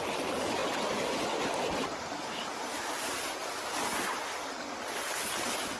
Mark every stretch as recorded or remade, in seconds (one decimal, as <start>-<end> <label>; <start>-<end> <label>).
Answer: 0.0-5.8 recorded